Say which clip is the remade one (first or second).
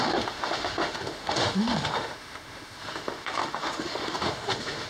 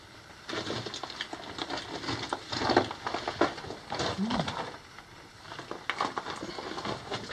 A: first